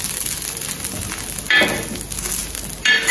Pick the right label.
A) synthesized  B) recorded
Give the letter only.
B